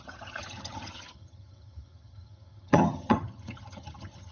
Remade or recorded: remade